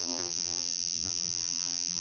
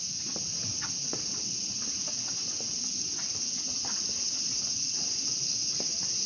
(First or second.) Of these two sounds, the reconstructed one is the first